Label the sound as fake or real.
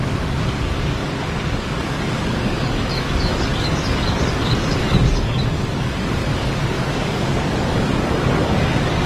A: fake